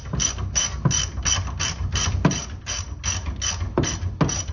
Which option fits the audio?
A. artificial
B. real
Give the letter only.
B